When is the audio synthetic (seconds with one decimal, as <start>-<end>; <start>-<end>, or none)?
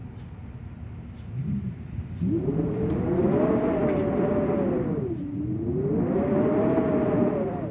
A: 1.4-2.7